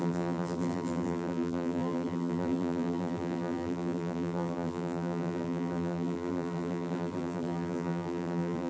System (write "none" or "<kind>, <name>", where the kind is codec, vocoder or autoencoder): vocoder, BigVGAN v2